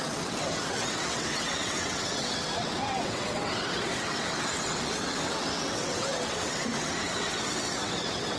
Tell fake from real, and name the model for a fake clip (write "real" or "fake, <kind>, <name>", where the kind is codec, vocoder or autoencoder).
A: fake, vocoder, WaveNeXt